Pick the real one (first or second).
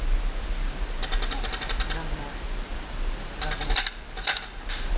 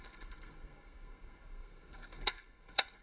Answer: first